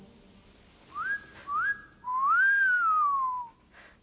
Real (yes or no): yes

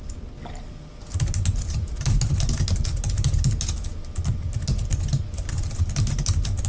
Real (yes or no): yes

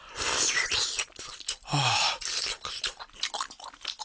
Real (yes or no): yes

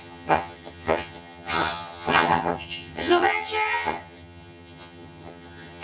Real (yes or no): no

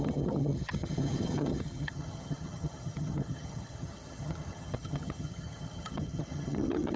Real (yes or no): no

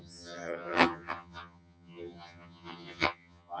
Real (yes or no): no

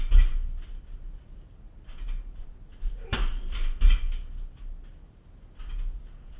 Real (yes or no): yes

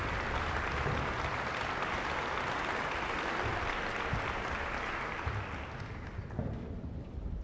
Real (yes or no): yes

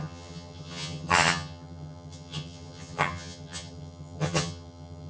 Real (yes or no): no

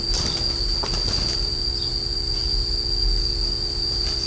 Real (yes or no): yes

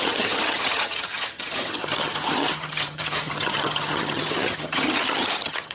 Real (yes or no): no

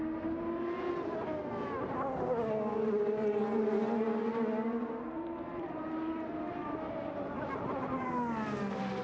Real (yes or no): yes